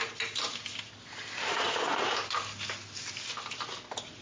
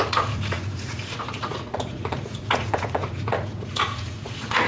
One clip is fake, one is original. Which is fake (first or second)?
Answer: second